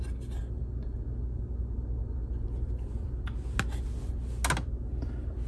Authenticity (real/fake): real